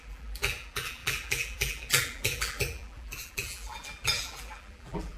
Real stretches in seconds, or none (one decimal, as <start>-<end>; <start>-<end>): none